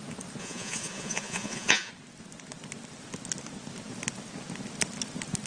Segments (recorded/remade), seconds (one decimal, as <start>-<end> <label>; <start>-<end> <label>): 0.0-0.4 recorded; 0.4-1.9 remade; 1.9-5.5 recorded